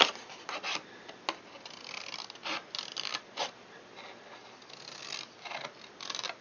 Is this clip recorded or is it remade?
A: recorded